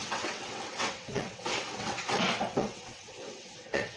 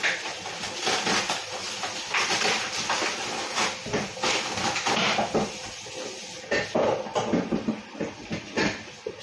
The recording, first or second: second